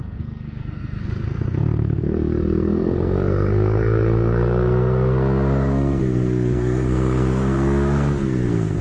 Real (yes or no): no